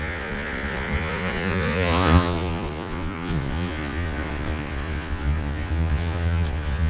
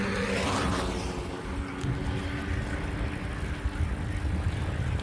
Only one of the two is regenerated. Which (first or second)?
first